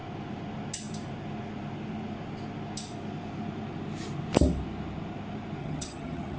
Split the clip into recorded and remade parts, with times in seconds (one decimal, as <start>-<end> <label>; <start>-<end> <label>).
0.0-5.6 recorded; 5.6-6.4 remade